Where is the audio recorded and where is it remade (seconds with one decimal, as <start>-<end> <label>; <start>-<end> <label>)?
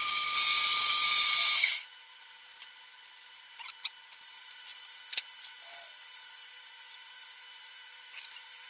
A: 0.0-4.7 remade; 4.7-5.4 recorded; 5.4-8.7 remade